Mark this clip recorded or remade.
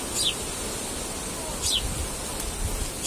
recorded